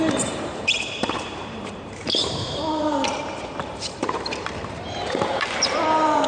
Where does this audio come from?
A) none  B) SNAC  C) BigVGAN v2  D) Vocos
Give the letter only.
C